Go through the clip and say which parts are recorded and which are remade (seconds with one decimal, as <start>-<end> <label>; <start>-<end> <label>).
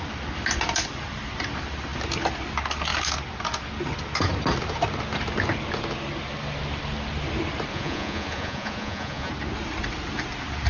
0.0-7.7 recorded; 7.7-9.3 remade; 9.3-10.7 recorded